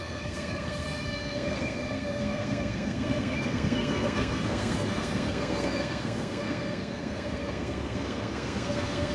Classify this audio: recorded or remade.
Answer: remade